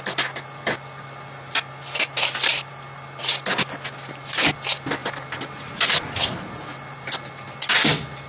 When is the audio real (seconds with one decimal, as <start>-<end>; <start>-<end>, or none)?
0.0-8.3